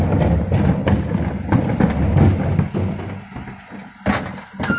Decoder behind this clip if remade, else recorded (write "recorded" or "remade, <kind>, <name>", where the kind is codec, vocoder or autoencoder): recorded